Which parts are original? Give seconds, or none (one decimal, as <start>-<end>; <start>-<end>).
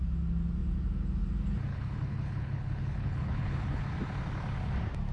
0.0-1.7; 3.8-5.1